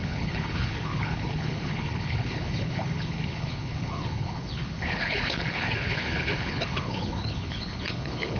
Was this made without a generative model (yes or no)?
no